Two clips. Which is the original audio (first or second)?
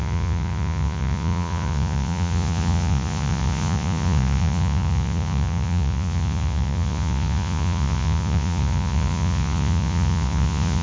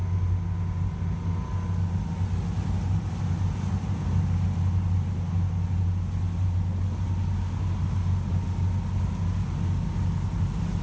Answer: second